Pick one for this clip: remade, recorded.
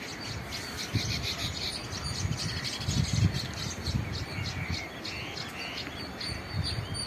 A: recorded